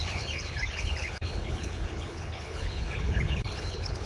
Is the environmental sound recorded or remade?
remade